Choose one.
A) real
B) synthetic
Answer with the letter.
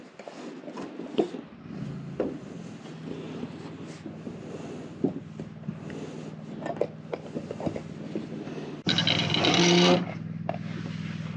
A